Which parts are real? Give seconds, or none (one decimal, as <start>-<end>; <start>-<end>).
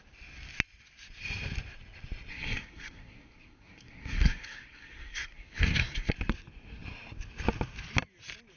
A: 0.0-2.3; 6.1-8.6